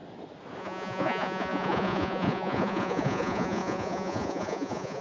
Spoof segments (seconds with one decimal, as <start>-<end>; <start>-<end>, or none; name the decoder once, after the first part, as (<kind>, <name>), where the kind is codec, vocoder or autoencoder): 0.6-5.0 (vocoder, Vocos)